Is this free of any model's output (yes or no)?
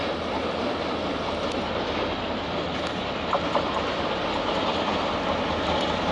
yes